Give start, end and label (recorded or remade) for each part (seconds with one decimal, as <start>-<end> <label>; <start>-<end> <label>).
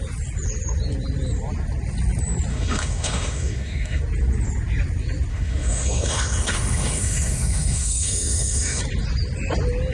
0.0-2.5 recorded; 2.5-4.0 remade; 4.0-5.3 recorded; 5.3-8.8 remade; 8.8-9.9 recorded